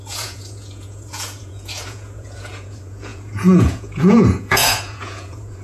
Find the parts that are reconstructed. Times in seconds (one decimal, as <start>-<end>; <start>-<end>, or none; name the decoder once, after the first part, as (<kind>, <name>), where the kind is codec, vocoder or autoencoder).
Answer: 0.0-5.6 (vocoder, Vocos)

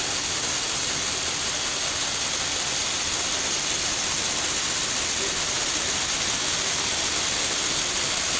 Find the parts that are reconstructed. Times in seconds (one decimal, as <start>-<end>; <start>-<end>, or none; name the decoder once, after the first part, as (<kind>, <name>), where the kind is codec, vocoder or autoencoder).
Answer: 1.7-3.8 (vocoder, BigVGAN v2)